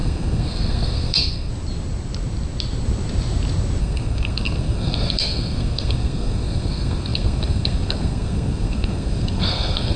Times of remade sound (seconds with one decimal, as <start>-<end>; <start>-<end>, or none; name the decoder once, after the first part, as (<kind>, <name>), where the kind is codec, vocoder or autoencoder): 0.0-1.5 (codec, SNAC); 3.8-10.0